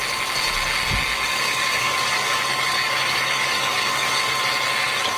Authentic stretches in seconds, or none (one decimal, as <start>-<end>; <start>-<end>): 0.0-1.3; 4.4-5.2